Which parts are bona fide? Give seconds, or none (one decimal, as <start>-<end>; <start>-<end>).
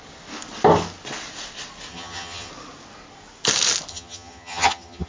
0.0-1.9; 2.5-3.9